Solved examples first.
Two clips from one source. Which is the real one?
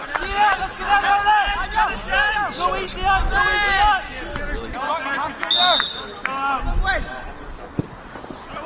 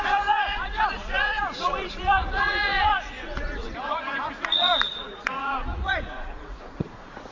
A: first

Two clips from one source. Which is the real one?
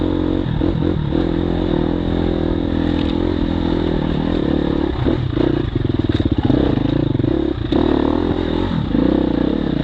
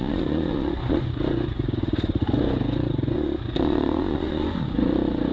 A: first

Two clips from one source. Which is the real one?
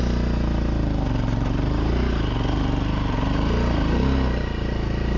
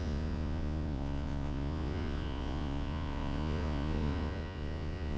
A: first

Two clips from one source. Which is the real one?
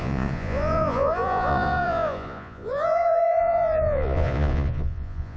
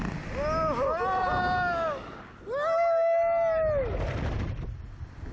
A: second